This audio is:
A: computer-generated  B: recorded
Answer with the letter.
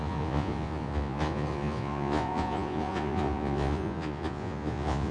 A